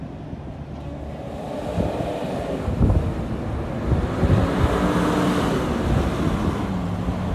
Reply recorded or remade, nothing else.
recorded